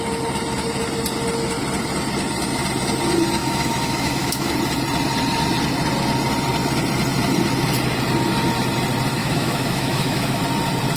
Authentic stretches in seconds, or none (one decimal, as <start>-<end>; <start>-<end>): 0.0-3.4; 4.5-9.2; 10.4-11.0